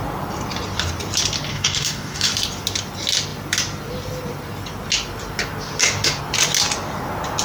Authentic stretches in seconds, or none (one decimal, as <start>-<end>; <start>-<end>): 0.0-1.5; 2.3-7.4